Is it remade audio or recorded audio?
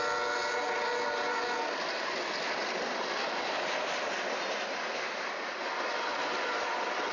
recorded